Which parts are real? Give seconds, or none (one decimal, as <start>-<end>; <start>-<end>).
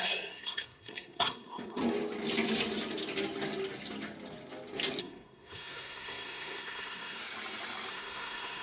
1.8-5.0; 7.2-7.9